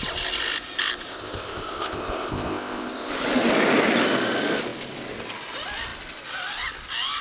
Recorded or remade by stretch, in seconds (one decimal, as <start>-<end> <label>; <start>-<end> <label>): 0.0-1.1 recorded; 1.1-3.1 remade; 3.1-7.2 recorded